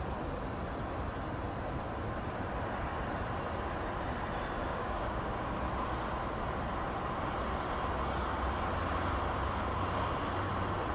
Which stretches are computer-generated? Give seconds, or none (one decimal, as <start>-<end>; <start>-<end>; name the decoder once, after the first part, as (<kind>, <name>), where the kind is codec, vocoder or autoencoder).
4.7-5.5 (codec, DAC)